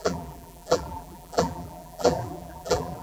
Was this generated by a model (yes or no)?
yes